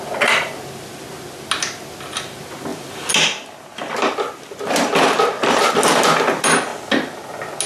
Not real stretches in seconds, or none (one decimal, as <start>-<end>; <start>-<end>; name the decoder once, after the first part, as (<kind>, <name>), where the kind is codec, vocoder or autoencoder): none